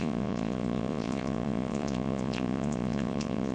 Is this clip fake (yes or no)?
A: yes